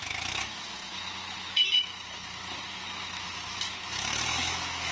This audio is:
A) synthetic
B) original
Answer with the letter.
A